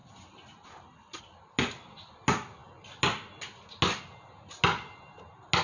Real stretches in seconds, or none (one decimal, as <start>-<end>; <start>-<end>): 0.0-5.6